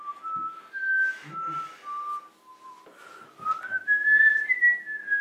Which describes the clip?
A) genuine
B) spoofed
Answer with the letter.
A